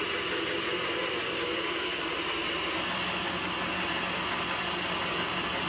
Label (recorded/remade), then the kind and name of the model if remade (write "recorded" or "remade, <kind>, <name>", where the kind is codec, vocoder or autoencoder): recorded